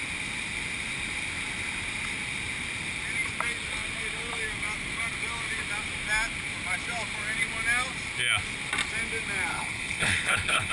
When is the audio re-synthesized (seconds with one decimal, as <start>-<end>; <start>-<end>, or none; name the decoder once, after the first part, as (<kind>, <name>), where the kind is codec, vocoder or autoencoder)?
9.5-10.7 (codec, HILCodec)